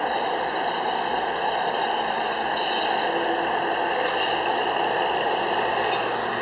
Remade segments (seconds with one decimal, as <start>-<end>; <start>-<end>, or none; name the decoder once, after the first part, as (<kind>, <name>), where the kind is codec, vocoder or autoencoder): none

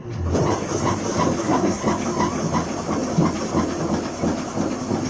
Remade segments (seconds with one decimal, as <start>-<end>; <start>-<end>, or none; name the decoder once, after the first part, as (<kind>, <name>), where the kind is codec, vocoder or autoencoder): 1.4-1.8 (codec, SNAC)

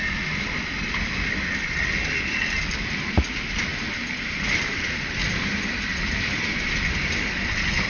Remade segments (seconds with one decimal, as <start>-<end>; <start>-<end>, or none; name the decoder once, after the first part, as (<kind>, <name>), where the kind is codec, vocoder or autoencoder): none

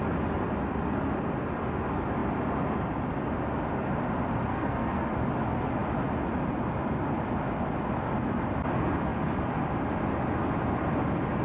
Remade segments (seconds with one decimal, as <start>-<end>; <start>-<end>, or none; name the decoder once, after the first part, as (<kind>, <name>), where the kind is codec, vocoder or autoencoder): 4.5-5.1 (codec, SNAC)

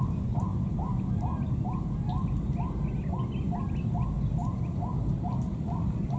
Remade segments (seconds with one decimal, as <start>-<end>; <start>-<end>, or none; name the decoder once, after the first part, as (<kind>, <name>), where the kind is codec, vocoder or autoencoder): none

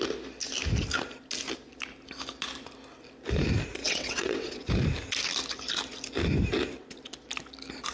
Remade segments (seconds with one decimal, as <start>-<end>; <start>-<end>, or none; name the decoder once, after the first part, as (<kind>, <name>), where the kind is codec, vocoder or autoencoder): 3.8-4.7 (vocoder, WaveNeXt)